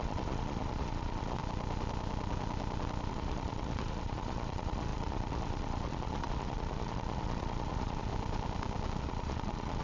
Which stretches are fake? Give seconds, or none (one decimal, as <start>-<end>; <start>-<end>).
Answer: 0.0-1.4; 3.1-8.1; 9.0-9.8